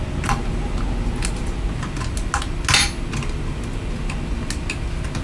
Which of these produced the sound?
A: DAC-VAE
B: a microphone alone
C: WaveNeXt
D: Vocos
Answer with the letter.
B